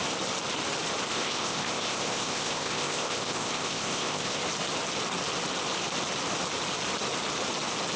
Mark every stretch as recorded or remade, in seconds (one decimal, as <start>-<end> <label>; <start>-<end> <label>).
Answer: 0.0-1.1 recorded; 1.1-4.4 remade; 4.4-8.0 recorded